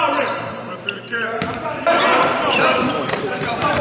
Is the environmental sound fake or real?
fake